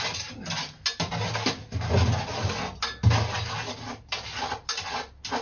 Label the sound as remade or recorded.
recorded